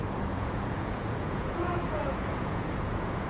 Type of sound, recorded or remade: remade